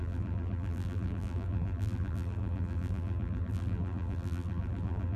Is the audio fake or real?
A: fake